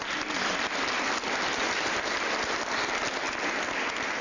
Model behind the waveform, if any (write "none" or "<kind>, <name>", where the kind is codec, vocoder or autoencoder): none